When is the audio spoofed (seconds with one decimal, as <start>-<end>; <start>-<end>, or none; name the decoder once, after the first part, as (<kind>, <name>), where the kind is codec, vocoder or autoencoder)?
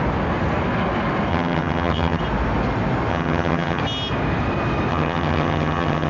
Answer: 1.3-2.2 (vocoder, HiFi-GAN); 3.1-3.8; 4.9-6.1